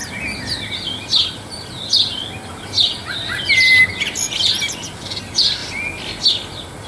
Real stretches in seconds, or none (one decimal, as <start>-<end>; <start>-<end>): 0.0-6.9